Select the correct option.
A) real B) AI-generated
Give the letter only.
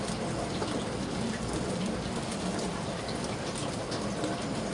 A